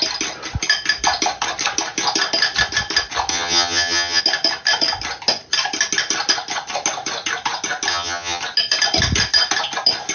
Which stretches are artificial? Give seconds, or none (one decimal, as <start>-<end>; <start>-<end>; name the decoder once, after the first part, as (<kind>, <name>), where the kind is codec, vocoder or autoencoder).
3.3-4.2 (vocoder, HiFi-GAN); 7.9-8.4